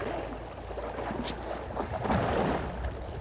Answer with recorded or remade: recorded